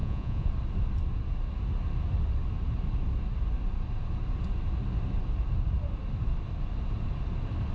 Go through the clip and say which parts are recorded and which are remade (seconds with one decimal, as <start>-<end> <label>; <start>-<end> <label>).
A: 0.0-0.5 remade; 0.5-7.7 recorded